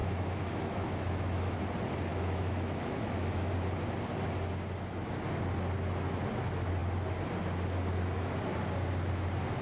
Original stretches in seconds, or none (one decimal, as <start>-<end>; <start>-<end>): 1.6-2.1; 3.5-9.6